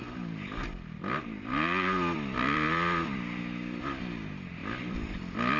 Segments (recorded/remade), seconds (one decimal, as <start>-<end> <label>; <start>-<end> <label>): 0.0-2.4 recorded; 2.4-3.4 remade; 3.4-4.6 recorded; 4.6-5.6 remade